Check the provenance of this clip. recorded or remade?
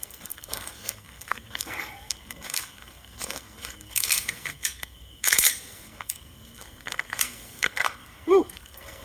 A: remade